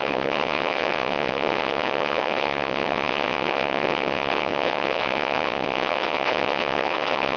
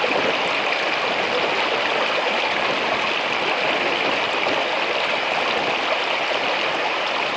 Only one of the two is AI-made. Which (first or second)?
first